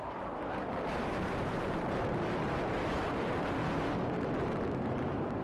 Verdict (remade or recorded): remade